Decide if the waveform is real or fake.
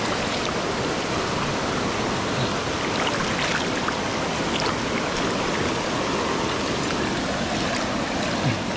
real